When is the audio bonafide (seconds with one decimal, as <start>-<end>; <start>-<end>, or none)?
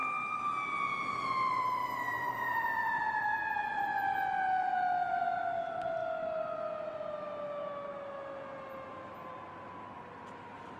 0.0-1.5; 3.9-5.1; 6.0-8.9